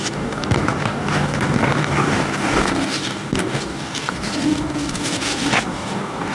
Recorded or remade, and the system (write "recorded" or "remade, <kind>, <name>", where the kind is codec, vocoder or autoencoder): remade, codec, DAC